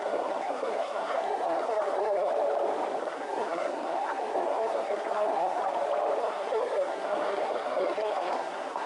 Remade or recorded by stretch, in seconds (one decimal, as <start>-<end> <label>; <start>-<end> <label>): 0.0-2.3 remade; 2.3-3.0 recorded; 3.0-5.6 remade; 5.6-6.2 recorded; 6.2-8.9 remade